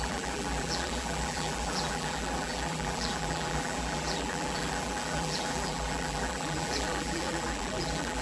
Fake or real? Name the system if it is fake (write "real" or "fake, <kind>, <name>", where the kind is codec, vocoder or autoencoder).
fake, vocoder, BigVGAN v2